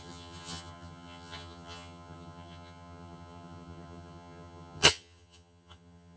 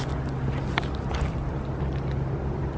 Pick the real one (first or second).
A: second